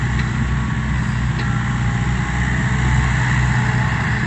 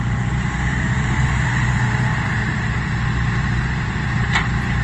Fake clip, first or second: second